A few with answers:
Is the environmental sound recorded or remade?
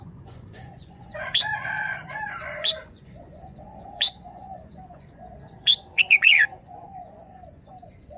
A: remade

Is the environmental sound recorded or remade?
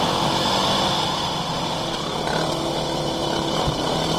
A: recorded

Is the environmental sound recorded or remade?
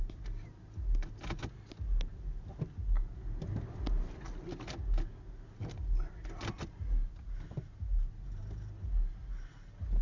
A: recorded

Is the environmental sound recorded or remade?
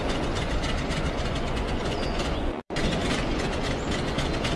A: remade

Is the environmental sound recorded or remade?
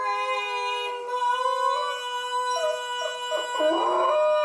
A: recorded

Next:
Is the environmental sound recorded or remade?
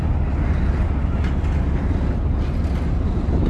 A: recorded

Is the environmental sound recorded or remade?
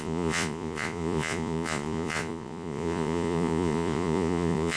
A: remade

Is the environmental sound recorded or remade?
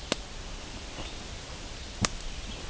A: recorded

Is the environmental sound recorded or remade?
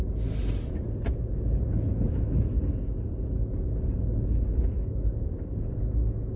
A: recorded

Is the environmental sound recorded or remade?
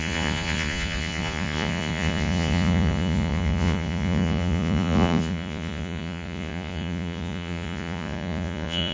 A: remade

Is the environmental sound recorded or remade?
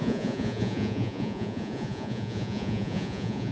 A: remade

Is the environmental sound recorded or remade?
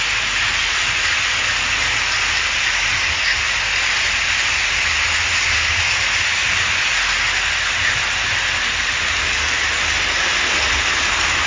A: recorded